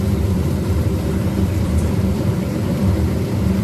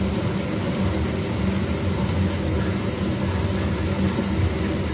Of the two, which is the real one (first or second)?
second